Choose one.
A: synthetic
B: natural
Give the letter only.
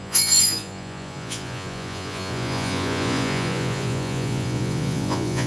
A